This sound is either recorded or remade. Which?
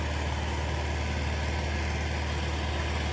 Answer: recorded